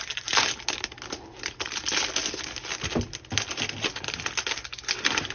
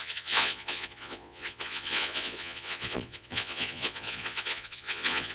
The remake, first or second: second